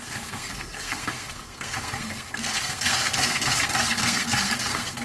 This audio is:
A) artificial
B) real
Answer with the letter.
A